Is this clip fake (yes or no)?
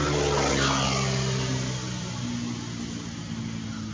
no